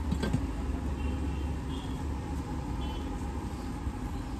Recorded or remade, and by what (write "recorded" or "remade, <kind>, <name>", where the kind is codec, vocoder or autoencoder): recorded